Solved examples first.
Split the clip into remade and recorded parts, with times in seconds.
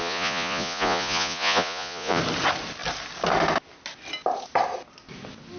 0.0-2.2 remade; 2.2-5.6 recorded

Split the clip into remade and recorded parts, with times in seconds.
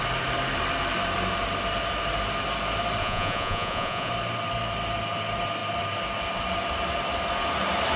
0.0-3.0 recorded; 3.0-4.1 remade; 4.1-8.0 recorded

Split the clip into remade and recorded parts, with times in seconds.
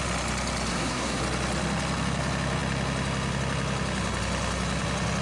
0.0-0.7 recorded; 0.7-1.2 remade; 1.2-5.2 recorded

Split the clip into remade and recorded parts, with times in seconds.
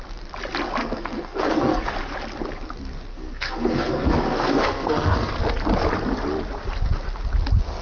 0.0-0.8 recorded; 0.8-1.9 remade; 1.9-3.1 recorded; 3.1-5.4 remade; 5.4-7.8 recorded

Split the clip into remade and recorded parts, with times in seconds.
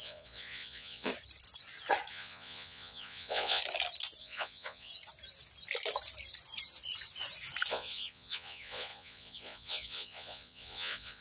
0.0-1.1 remade; 1.1-2.1 recorded; 2.1-3.6 remade; 3.6-4.2 recorded; 4.2-4.9 remade; 4.9-7.7 recorded; 7.7-11.2 remade